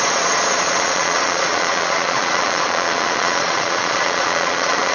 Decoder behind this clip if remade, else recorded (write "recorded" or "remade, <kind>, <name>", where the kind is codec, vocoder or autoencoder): remade, vocoder, Vocos